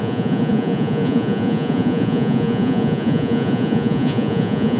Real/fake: fake